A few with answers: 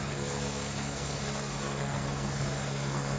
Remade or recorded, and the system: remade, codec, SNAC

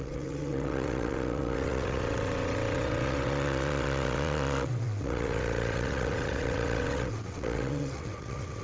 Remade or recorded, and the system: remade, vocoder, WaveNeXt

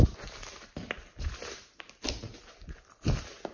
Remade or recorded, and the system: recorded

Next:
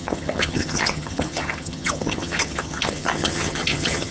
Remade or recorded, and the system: remade, vocoder, HiFi-GAN